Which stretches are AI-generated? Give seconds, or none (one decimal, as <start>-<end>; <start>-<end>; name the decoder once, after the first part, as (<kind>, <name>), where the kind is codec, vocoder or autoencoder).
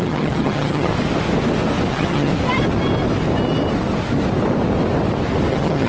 0.0-0.9 (vocoder, HiFi-GAN); 1.9-2.3; 5.5-5.9